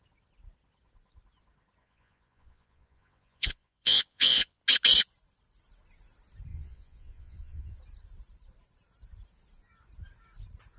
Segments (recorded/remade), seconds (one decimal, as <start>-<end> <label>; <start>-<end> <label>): 0.0-1.8 recorded; 1.8-4.6 remade; 4.6-6.5 recorded; 6.5-7.8 remade; 7.8-10.8 recorded